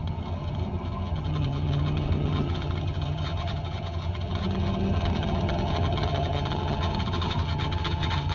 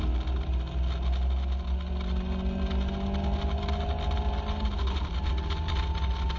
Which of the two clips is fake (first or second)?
first